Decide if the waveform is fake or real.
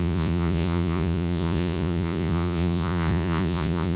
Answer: fake